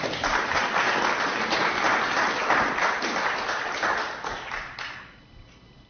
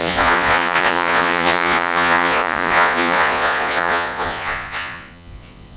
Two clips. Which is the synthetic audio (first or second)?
second